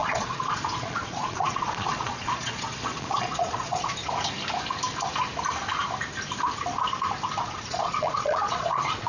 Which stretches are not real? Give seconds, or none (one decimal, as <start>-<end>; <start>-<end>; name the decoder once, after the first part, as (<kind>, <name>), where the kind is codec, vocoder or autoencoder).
0.0-4.0 (vocoder, Vocos); 7.4-9.1